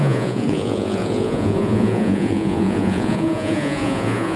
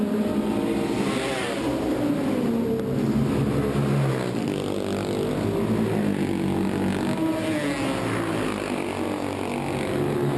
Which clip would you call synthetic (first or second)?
first